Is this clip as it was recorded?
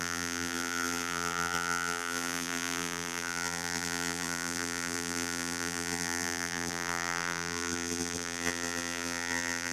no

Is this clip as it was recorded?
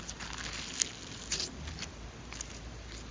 yes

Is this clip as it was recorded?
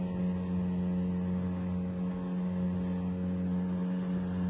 yes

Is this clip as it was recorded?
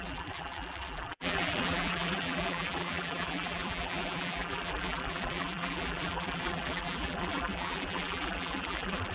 no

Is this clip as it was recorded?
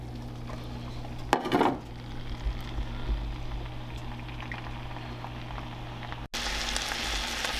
yes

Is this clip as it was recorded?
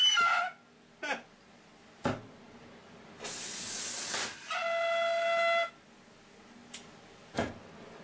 yes